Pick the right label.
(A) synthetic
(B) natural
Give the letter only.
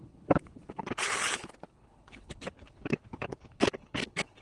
A